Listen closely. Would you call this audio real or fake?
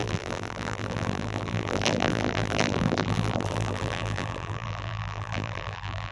fake